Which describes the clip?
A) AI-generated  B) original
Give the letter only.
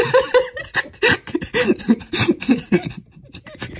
B